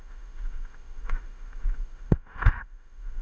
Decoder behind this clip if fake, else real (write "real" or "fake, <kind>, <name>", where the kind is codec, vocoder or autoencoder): fake, autoencoder, DAC-VAE